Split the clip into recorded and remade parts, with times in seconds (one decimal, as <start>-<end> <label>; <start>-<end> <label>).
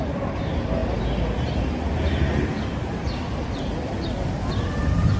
0.0-2.7 recorded; 2.7-4.6 remade; 4.6-5.2 recorded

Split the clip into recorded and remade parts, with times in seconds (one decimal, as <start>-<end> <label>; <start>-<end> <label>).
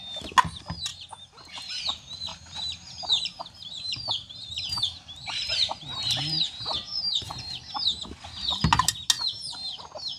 0.0-0.9 recorded; 0.9-1.8 remade; 1.8-2.3 recorded; 2.3-7.3 remade; 7.3-10.2 recorded